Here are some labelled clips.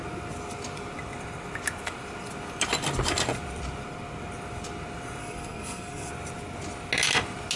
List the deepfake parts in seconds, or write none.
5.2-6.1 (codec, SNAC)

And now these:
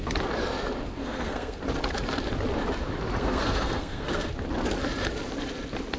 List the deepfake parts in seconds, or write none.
1.0-1.6 (codec, SNAC); 3.2-4.3

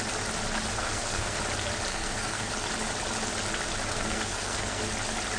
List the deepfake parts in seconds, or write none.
0.7-1.4 (codec, SNAC); 1.9-2.5; 3.9-4.8

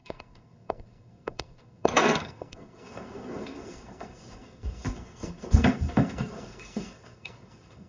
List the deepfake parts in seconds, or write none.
0.0-7.9 (codec, SNAC)